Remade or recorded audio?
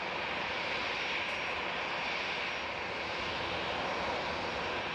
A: recorded